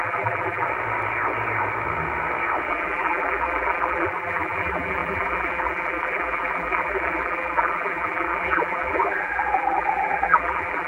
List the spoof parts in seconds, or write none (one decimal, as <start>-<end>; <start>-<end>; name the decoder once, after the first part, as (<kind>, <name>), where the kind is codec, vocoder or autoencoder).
0.0-0.7 (vocoder, BigVGAN v2); 2.7-10.9